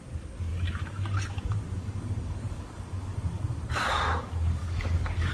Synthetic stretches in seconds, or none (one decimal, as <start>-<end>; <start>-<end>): 0.0-5.3